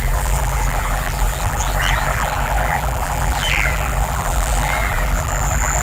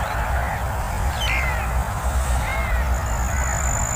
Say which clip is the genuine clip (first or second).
second